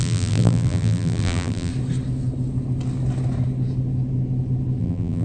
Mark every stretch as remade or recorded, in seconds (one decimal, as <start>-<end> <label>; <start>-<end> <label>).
0.0-1.7 remade; 1.7-4.8 recorded; 4.8-5.2 remade